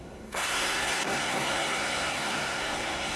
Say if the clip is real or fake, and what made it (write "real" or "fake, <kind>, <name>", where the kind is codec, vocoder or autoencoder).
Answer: fake, codec, SNAC